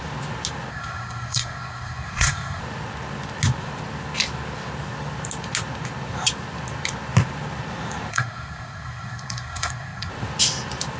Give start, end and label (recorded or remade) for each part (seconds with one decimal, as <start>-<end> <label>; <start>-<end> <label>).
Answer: 0.0-0.7 recorded; 0.7-2.6 remade; 2.6-8.1 recorded; 8.1-10.1 remade; 10.1-11.0 recorded